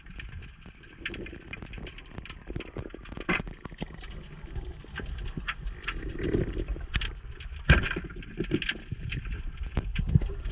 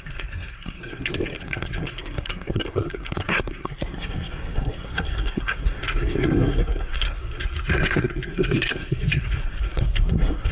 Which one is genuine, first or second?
first